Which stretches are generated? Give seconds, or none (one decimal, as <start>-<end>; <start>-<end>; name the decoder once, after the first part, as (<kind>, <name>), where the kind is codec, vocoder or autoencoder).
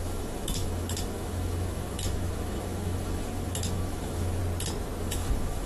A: 0.0-4.4 (autoencoder, DAC-VAE); 5.0-5.7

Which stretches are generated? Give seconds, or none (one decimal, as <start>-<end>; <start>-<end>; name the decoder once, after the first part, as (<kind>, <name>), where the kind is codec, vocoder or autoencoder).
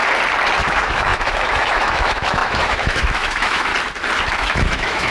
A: 0.6-3.7 (autoencoder, DAC-VAE); 4.4-5.1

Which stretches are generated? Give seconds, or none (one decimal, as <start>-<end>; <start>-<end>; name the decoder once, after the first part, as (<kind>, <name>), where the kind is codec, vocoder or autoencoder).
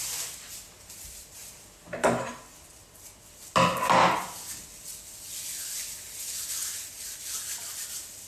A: none